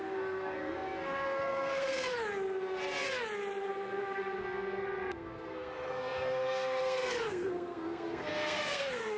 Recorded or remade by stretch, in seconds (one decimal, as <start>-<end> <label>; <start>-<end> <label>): 0.0-2.1 remade; 2.1-3.7 recorded; 3.7-9.2 remade